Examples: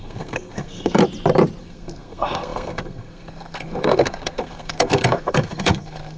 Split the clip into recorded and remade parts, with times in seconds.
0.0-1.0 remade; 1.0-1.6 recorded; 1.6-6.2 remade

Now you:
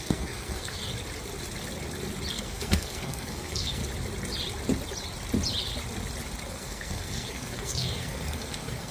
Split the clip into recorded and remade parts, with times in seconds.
0.0-0.8 remade; 0.8-2.3 recorded; 2.3-3.8 remade; 3.8-6.5 recorded; 6.5-8.9 remade

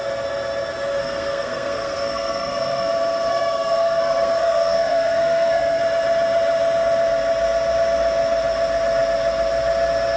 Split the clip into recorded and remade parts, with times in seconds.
0.0-1.0 recorded; 1.0-2.9 remade; 2.9-3.3 recorded; 3.3-5.8 remade; 5.8-10.2 recorded

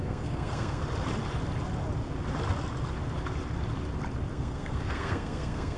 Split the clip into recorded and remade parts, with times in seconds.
0.0-0.8 remade; 0.8-4.3 recorded; 4.3-5.8 remade

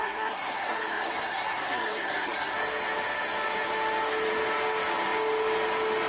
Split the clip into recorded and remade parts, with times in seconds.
0.0-2.5 remade; 2.5-6.1 recorded

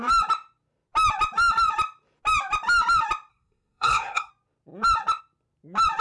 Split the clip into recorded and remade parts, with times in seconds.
0.0-3.3 recorded; 3.3-4.3 remade; 4.3-6.0 recorded

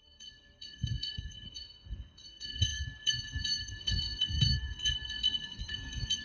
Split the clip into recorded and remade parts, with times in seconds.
0.0-6.2 remade

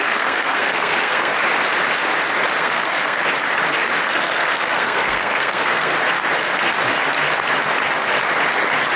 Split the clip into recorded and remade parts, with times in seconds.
0.0-1.3 remade; 1.3-2.6 recorded; 2.6-3.2 remade; 3.2-4.0 recorded; 4.0-5.9 remade; 5.9-9.0 recorded